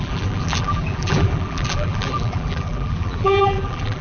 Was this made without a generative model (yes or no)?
no